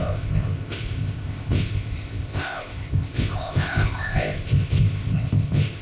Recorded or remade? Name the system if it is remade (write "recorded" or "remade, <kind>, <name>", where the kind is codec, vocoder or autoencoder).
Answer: remade, codec, ZipCodec